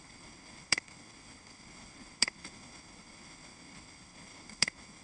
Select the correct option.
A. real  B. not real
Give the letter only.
B